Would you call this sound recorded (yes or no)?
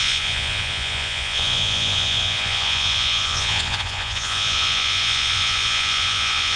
no